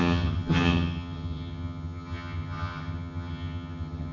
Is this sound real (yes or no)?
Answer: no